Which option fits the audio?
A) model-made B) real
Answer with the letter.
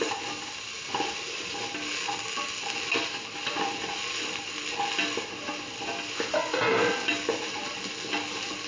B